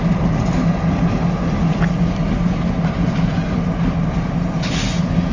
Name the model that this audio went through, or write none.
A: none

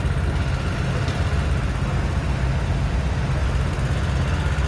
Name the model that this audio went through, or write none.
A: none